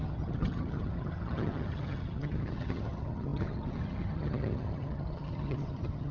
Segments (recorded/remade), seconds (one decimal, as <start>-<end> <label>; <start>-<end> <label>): 0.0-6.1 remade